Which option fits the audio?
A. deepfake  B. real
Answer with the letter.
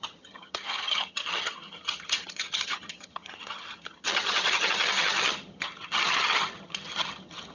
A